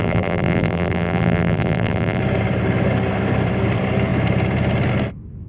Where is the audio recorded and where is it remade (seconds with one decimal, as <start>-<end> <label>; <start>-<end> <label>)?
0.0-2.2 remade; 2.2-5.5 recorded